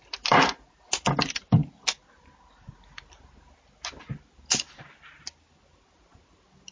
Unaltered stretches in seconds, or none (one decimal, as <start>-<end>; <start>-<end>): 0.0-6.7